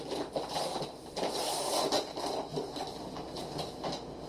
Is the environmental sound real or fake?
real